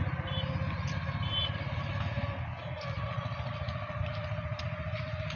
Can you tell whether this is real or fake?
real